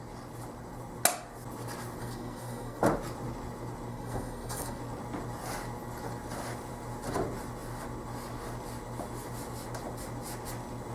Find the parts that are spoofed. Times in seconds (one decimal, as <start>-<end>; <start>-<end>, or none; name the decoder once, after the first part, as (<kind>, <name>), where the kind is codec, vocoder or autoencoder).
2.0-2.8 (codec, SNAC); 3.9-4.8